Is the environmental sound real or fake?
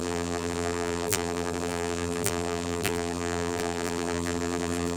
fake